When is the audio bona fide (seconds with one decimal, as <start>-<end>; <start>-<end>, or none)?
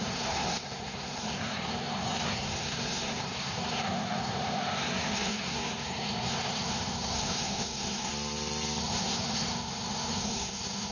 8.1-8.8